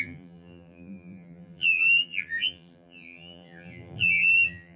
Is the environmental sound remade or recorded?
remade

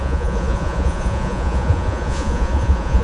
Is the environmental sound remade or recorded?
remade